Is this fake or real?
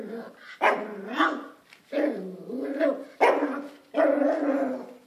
real